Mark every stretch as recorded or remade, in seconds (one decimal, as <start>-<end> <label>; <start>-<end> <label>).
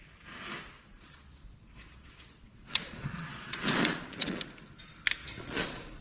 0.0-0.8 recorded; 0.8-4.4 remade; 4.4-5.2 recorded; 5.2-6.0 remade